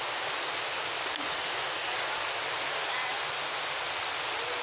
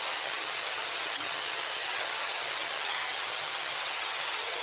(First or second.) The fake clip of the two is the second